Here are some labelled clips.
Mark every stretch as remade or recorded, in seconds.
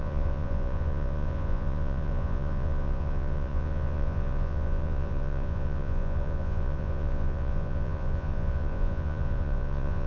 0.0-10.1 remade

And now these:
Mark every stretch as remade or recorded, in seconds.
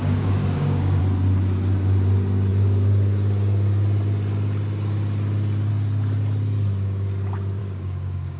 0.0-1.0 remade; 1.0-7.6 recorded; 7.6-8.4 remade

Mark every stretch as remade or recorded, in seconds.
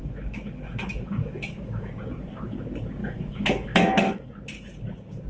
0.0-1.9 remade; 1.9-3.0 recorded; 3.0-4.3 remade; 4.3-5.3 recorded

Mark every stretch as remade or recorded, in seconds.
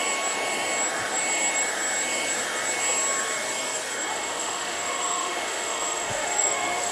0.0-4.1 recorded; 4.1-6.9 remade